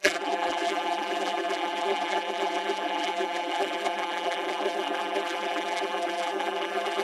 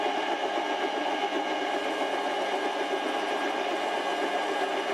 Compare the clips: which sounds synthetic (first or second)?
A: first